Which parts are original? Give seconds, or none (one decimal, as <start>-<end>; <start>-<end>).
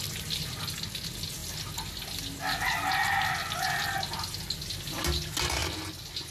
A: 0.0-6.3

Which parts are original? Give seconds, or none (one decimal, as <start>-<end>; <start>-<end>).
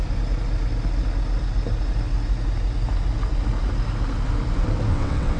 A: 0.0-4.9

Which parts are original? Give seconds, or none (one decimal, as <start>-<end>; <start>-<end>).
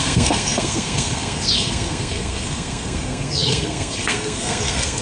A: none